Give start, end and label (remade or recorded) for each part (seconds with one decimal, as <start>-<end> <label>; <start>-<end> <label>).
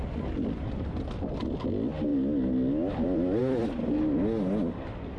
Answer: 0.0-5.2 recorded